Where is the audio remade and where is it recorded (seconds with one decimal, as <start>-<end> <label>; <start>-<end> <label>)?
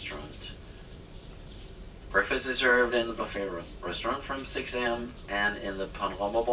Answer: 0.0-2.7 recorded; 2.7-5.1 remade; 5.1-6.5 recorded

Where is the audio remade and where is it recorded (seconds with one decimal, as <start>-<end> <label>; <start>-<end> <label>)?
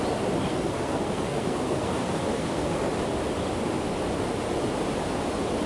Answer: 0.0-0.5 recorded; 0.5-2.9 remade; 2.9-5.7 recorded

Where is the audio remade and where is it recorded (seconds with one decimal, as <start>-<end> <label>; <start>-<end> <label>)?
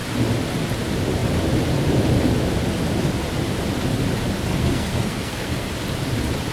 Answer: 0.0-4.5 recorded; 4.5-5.7 remade; 5.7-6.5 recorded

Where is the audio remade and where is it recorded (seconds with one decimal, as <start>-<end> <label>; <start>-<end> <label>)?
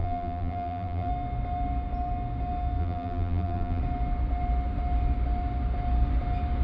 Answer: 0.0-1.1 remade; 1.1-2.8 recorded; 2.8-3.8 remade; 3.8-6.6 recorded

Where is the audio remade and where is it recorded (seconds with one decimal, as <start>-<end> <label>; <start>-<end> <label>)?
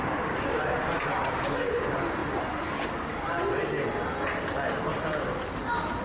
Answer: 0.0-0.6 remade; 0.6-6.0 recorded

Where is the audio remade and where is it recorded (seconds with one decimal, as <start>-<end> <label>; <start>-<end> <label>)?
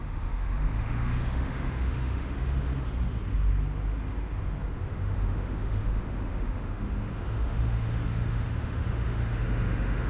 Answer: 0.0-2.7 remade; 2.7-4.8 recorded; 4.8-10.1 remade